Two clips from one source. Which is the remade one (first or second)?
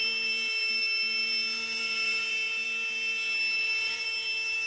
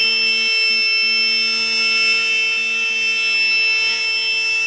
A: first